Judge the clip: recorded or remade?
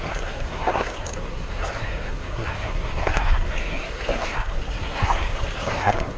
remade